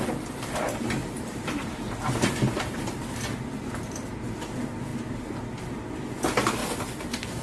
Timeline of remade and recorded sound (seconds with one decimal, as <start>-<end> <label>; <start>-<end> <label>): 0.0-1.0 recorded; 1.0-3.3 remade; 3.3-6.6 recorded; 6.6-7.4 remade